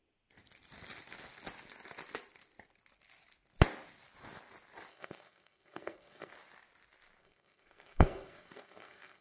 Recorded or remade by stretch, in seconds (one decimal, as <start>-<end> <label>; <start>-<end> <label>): 0.0-4.9 recorded; 4.9-6.3 remade; 6.3-7.2 recorded; 7.2-9.2 remade